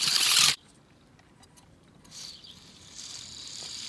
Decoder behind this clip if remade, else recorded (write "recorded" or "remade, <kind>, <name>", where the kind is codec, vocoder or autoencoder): remade, vocoder, BigVGAN v2